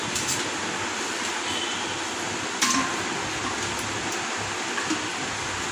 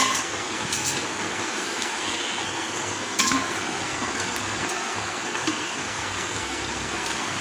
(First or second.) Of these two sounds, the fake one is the second